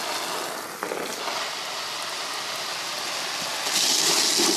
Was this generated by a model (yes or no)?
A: no